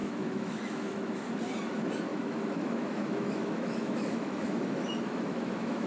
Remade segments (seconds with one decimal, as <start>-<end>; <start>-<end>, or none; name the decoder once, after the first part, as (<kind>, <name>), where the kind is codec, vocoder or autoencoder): 0.0-1.3 (autoencoder, DAC-VAE); 2.1-5.9